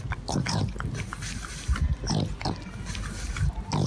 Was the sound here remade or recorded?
recorded